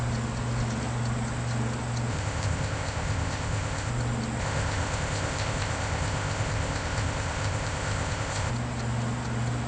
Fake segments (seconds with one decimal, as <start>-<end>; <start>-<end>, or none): 2.1-3.9; 4.4-8.5